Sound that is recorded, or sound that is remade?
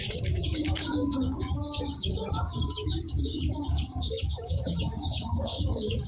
remade